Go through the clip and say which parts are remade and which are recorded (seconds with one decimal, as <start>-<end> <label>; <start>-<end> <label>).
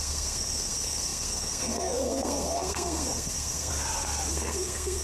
0.0-3.7 remade; 3.7-4.3 recorded; 4.3-5.0 remade